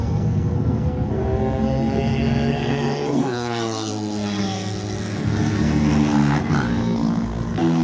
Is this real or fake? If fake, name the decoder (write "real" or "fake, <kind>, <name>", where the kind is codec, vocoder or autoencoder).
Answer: fake, codec, SNAC